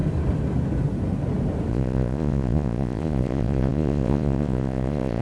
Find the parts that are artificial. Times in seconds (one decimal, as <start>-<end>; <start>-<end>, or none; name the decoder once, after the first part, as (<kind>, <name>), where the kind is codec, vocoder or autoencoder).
1.7-5.2 (vocoder, Vocos)